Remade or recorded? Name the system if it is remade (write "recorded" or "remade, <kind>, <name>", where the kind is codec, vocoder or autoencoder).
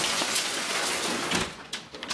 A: remade, vocoder, Vocos